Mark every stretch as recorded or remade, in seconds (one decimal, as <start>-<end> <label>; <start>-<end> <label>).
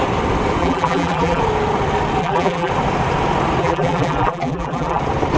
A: 0.0-0.6 recorded; 0.6-1.4 remade; 1.4-2.2 recorded; 2.2-2.7 remade; 2.7-3.6 recorded; 3.6-5.0 remade; 5.0-5.4 recorded